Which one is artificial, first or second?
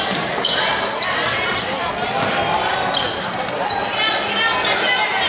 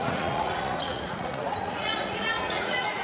second